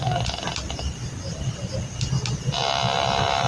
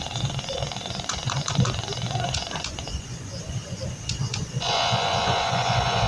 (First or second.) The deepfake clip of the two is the second